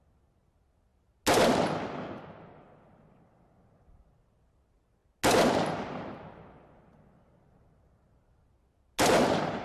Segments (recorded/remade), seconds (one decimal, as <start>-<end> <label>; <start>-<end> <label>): 0.0-9.6 recorded